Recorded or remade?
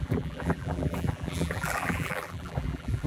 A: remade